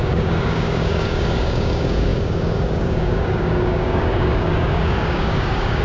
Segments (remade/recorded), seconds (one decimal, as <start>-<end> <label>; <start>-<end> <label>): 0.0-5.8 remade